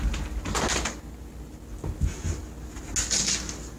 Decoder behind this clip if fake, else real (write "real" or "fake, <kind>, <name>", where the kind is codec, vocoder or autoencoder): real